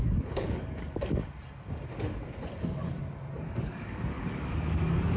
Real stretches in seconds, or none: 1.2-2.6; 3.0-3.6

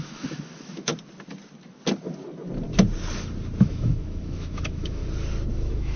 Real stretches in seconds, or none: 0.9-3.6; 5.0-5.5